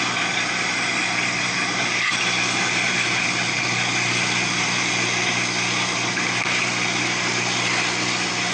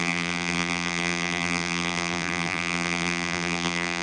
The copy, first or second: second